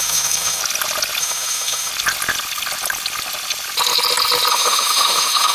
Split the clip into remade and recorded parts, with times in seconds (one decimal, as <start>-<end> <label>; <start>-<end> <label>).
0.0-0.6 remade; 0.6-1.2 recorded; 1.2-1.9 remade; 1.9-4.5 recorded; 4.5-5.5 remade